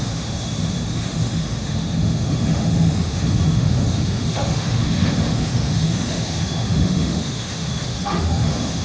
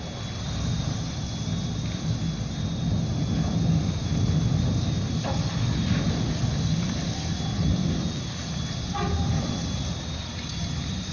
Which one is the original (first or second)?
second